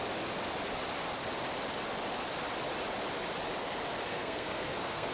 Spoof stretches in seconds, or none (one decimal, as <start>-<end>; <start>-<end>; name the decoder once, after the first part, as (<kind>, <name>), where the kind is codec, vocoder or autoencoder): 4.1-5.1 (codec, SNAC)